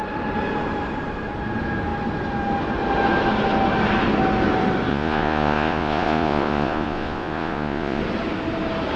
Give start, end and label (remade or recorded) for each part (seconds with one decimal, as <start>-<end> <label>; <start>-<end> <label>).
0.0-4.9 recorded; 4.9-8.0 remade; 8.0-9.0 recorded